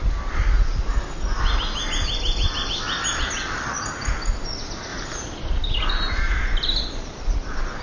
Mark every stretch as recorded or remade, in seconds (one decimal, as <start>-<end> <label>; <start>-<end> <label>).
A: 0.0-7.8 recorded